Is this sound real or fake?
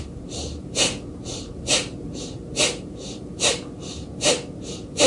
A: fake